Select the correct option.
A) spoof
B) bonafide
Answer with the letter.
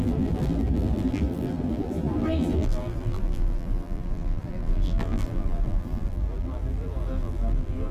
A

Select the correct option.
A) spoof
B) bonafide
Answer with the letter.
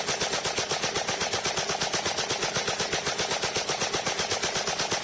B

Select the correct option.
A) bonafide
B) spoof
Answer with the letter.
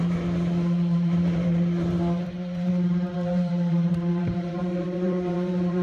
B